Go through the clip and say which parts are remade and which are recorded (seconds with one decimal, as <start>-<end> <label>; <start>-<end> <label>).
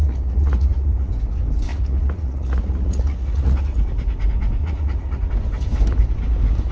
0.0-1.1 remade; 1.1-1.7 recorded; 1.7-3.8 remade; 3.8-4.6 recorded; 4.6-5.3 remade; 5.3-6.7 recorded